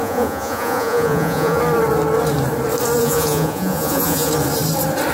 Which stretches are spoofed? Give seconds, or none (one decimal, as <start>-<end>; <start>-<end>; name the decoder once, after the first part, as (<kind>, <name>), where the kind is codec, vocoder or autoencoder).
0.0-1.6 (vocoder, Vocos); 3.0-4.3